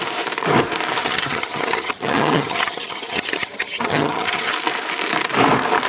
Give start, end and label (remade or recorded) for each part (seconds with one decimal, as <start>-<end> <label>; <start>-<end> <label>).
0.0-1.0 recorded; 1.0-4.5 remade; 4.5-5.9 recorded